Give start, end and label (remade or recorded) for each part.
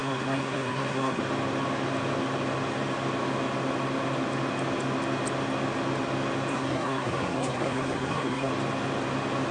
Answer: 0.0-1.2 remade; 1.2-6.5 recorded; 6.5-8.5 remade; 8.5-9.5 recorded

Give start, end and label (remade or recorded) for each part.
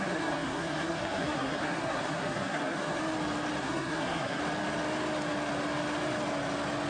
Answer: 0.0-3.0 remade; 3.0-3.6 recorded; 3.6-4.4 remade; 4.4-6.9 recorded